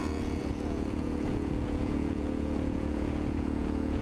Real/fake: fake